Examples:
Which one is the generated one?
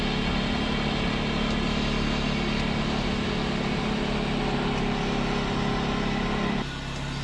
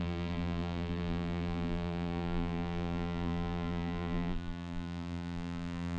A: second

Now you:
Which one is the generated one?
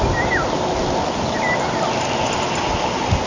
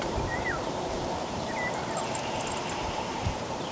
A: second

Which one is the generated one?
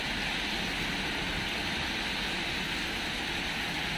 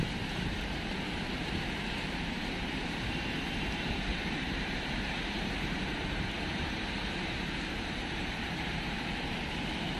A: second